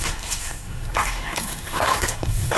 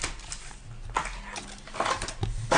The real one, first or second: second